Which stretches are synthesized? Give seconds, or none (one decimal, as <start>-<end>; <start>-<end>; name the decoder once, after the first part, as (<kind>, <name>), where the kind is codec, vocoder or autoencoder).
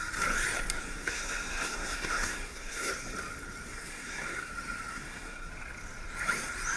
0.8-2.9 (codec, SNAC); 3.7-4.5; 4.9-5.5